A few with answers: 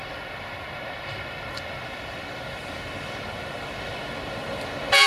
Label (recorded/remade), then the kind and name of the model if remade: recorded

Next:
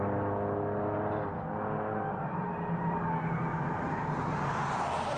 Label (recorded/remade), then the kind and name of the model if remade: recorded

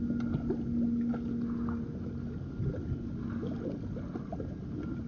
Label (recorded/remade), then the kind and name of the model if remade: recorded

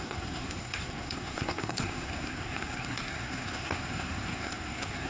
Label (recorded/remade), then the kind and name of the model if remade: remade, codec, SNAC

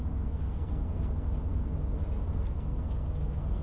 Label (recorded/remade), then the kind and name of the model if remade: remade, codec, SNAC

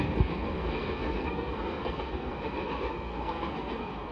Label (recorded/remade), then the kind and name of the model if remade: remade, codec, SNAC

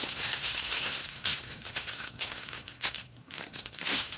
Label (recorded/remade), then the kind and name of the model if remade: remade, codec, SNAC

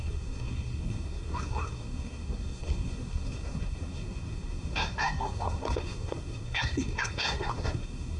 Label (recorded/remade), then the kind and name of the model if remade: remade, codec, SNAC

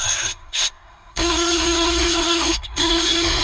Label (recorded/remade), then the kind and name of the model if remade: remade, codec, SNAC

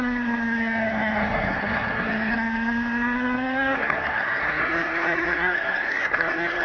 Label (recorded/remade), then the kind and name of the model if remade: remade, codec, SNAC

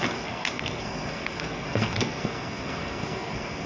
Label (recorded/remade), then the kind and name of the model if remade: remade, codec, SNAC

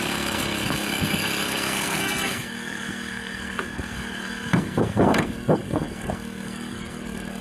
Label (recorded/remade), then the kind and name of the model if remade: remade, codec, SNAC